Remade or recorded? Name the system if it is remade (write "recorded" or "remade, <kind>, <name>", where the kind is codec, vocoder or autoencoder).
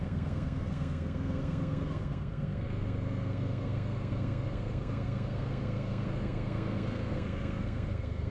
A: remade, codec, SNAC